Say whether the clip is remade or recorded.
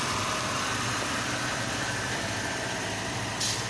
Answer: remade